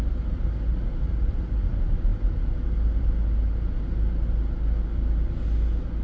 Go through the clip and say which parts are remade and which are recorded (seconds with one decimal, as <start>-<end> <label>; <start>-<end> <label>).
0.0-6.0 recorded